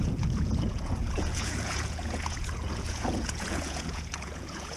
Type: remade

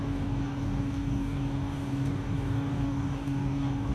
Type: remade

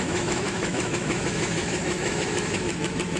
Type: remade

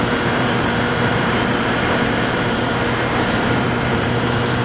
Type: remade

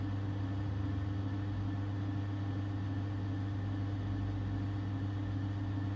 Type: recorded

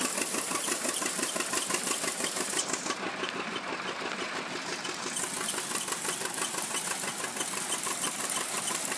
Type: recorded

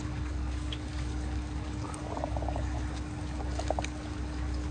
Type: remade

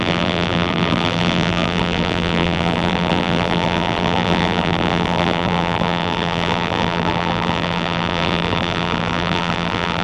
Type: remade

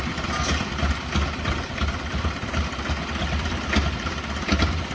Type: recorded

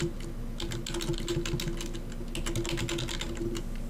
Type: recorded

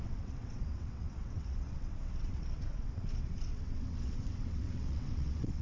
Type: remade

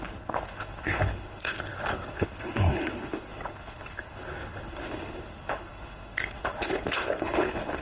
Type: remade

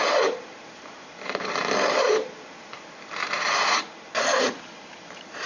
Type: remade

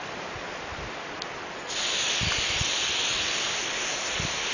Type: recorded